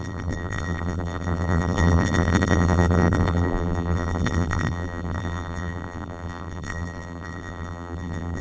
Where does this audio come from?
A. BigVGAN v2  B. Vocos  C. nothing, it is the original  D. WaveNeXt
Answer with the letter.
A